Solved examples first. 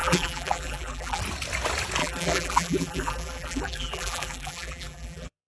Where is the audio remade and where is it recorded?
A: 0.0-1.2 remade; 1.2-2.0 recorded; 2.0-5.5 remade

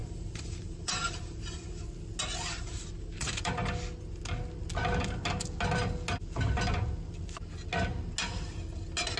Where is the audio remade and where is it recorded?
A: 0.0-1.8 remade; 1.8-2.5 recorded; 2.5-3.7 remade; 3.7-9.2 recorded

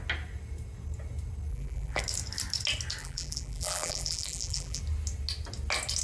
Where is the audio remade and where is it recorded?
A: 0.0-1.5 recorded; 1.5-2.0 remade; 2.0-3.0 recorded; 3.0-4.8 remade; 4.8-6.0 recorded

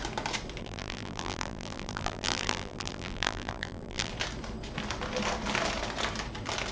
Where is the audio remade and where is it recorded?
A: 0.0-0.6 recorded; 0.6-4.1 remade; 4.1-6.7 recorded

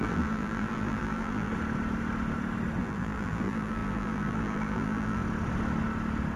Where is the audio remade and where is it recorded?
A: 0.0-1.5 remade; 1.5-2.8 recorded; 2.8-5.2 remade; 5.2-6.4 recorded